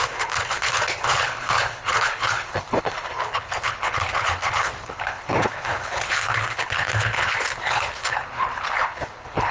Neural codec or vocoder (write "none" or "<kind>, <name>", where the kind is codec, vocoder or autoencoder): codec, HILCodec